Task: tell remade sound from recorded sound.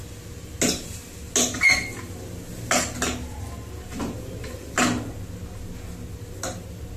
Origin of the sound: recorded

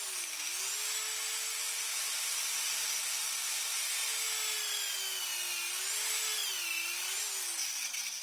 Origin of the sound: recorded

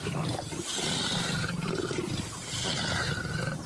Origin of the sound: recorded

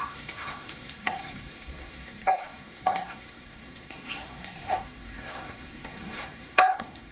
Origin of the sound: remade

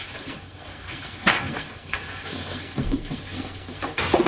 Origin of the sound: remade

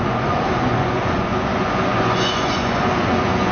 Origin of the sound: remade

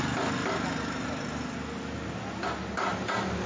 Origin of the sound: recorded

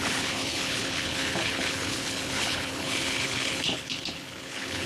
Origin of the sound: remade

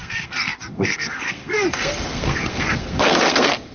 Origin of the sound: remade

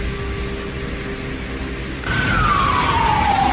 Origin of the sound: recorded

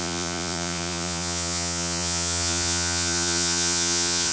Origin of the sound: remade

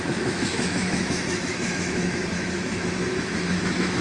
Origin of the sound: remade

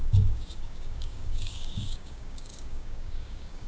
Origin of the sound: remade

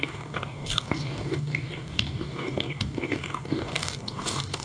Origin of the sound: remade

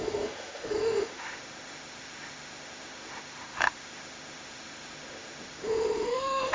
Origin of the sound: remade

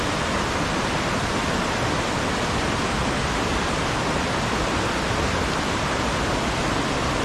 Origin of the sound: recorded